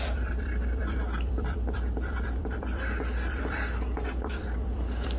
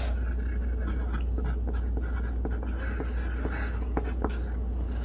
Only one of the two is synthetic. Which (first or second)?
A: first